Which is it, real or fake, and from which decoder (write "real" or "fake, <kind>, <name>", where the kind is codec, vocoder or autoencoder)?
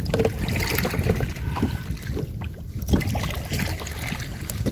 real